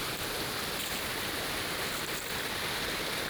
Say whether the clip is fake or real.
real